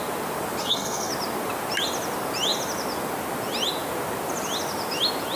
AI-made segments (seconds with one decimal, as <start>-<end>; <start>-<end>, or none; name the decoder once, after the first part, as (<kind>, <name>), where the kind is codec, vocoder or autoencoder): 0.6-1.1 (codec, SNAC)